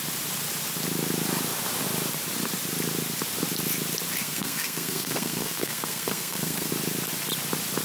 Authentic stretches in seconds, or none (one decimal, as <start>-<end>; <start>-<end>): 0.0-4.2; 6.7-7.8